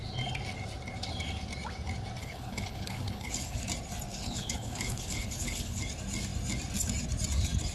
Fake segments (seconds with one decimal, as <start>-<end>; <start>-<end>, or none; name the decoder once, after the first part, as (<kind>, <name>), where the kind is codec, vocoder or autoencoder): 2.2-3.6 (codec, HILCodec); 4.1-5.8